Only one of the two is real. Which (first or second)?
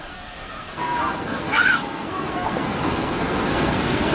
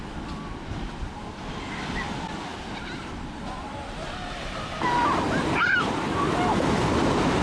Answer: second